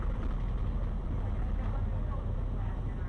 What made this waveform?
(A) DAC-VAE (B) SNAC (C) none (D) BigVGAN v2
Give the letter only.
C